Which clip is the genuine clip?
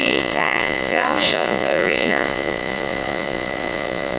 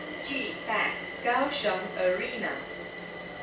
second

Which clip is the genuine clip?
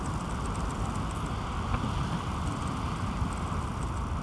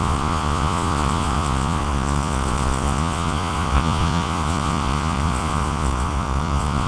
first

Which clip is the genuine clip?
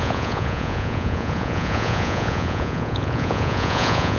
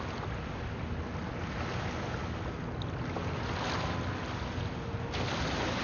second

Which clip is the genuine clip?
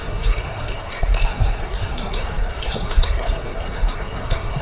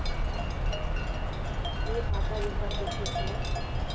second